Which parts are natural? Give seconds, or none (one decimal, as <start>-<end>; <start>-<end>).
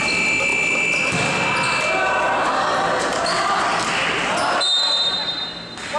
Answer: 0.0-6.0